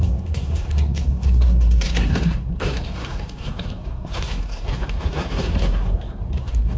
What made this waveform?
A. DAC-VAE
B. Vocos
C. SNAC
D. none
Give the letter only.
C